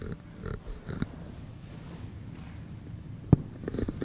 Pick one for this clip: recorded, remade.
recorded